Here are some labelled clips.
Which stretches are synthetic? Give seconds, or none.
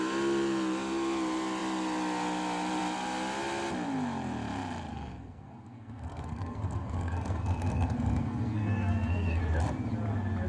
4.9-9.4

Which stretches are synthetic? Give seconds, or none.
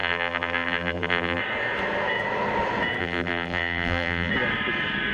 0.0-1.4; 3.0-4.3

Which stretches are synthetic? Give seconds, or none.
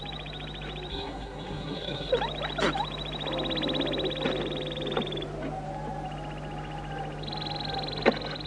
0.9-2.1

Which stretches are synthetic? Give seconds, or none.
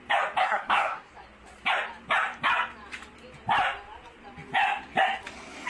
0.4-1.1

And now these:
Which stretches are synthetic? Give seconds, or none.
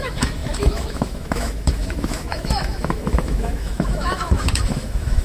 0.0-5.2